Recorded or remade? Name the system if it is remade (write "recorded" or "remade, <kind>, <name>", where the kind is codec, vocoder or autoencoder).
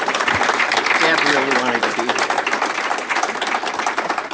remade, vocoder, BigVGAN v2